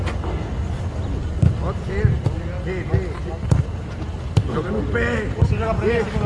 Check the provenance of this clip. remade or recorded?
recorded